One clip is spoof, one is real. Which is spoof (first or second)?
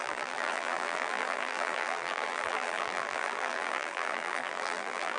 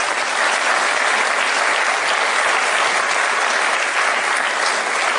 first